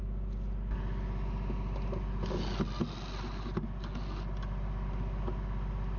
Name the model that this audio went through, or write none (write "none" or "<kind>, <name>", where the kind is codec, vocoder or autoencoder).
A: none